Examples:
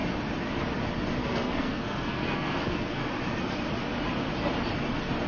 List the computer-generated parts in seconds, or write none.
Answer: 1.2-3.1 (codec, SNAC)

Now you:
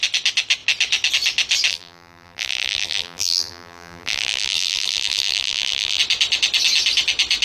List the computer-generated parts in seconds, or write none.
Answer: 1.7-6.0 (vocoder, BigVGAN v2)

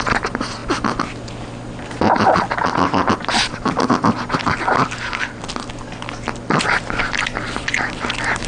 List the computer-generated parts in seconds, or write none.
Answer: none

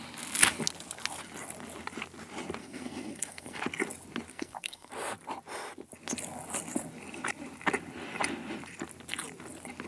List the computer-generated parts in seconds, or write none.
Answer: 2.6-3.6 (codec, SNAC); 4.3-4.9